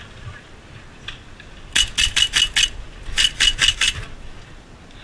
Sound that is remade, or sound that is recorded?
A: recorded